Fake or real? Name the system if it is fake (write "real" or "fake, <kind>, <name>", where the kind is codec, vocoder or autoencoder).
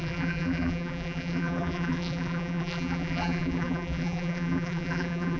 fake, vocoder, BigVGAN v2